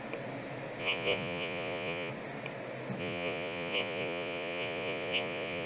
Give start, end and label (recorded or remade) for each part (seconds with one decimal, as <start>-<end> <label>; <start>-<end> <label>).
0.0-0.8 recorded; 0.8-2.1 remade; 2.1-3.0 recorded; 3.0-5.7 remade